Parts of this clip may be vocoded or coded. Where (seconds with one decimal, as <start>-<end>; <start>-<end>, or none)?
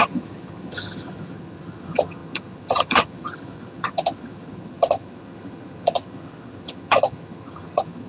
0.0-8.1